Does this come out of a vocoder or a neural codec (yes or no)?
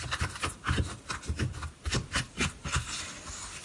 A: yes